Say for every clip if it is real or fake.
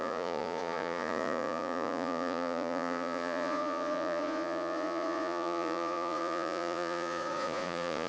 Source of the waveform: fake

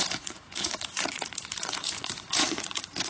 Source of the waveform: fake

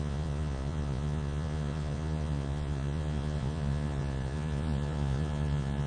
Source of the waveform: fake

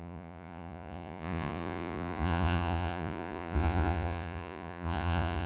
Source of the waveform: fake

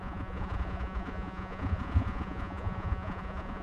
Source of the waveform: fake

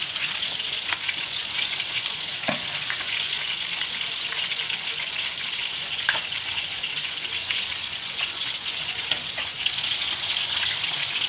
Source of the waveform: fake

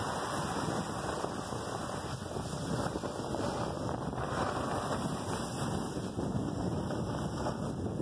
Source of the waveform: real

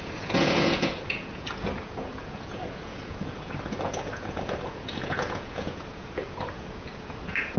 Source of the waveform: fake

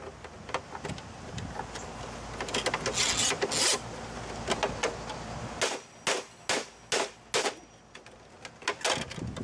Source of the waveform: real